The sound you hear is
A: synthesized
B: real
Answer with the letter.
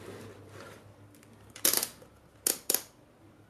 B